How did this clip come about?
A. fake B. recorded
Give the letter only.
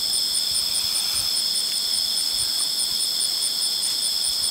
B